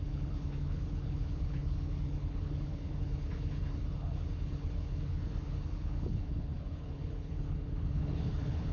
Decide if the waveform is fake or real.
fake